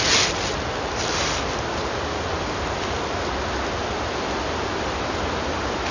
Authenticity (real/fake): real